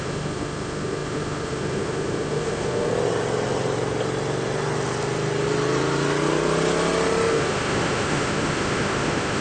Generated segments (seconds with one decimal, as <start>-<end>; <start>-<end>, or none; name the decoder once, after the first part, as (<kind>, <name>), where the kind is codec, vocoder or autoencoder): 0.0-2.9 (autoencoder, DAC-VAE); 7.3-9.4